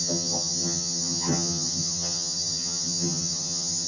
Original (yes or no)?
no